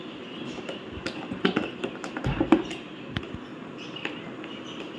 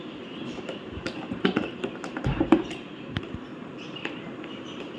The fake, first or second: second